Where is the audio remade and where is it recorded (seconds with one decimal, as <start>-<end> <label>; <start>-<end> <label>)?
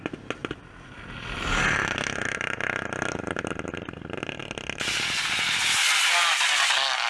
0.0-7.1 recorded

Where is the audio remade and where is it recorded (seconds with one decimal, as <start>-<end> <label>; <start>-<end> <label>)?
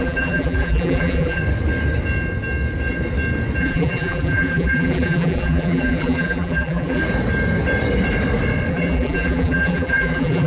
0.0-1.4 remade; 1.4-3.6 recorded; 3.6-7.0 remade; 7.0-8.7 recorded; 8.7-10.5 remade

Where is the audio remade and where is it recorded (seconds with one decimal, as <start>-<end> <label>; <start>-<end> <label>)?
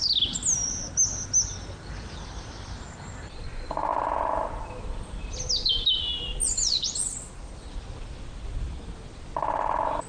0.0-10.1 recorded